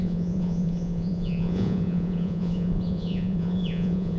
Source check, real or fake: fake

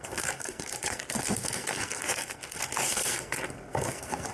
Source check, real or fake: fake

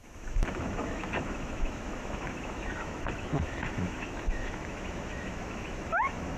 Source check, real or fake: fake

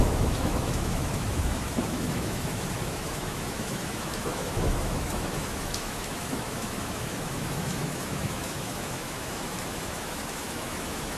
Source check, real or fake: fake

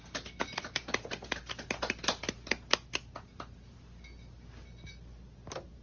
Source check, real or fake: real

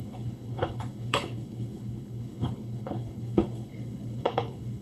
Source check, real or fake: fake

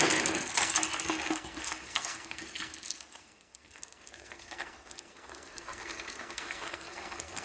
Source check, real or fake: fake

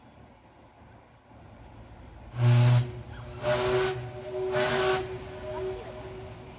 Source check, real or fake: real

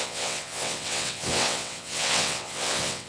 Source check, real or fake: fake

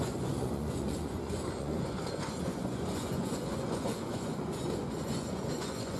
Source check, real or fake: fake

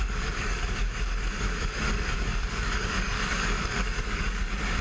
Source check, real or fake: fake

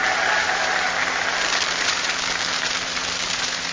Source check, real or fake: real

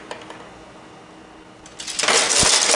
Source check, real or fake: real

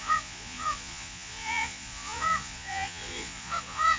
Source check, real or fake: fake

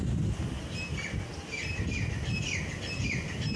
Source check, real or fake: real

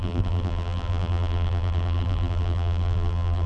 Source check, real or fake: fake